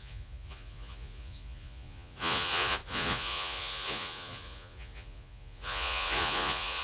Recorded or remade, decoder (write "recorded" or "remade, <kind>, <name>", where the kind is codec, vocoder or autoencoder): remade, vocoder, Vocos